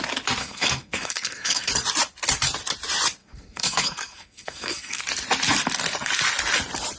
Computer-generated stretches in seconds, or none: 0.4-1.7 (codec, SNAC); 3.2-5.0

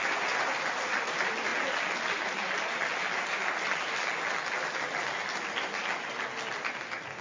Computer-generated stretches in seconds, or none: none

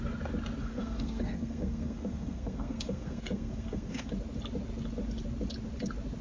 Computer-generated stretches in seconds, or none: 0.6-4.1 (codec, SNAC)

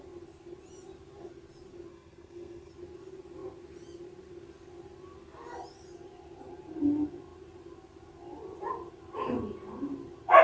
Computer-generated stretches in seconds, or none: 1.9-2.7 (codec, SNAC)

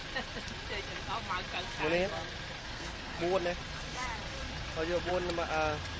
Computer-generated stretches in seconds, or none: 2.6-3.2 (codec, SNAC)